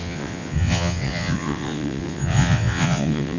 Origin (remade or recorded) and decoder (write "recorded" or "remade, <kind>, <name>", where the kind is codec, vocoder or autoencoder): remade, vocoder, WaveNeXt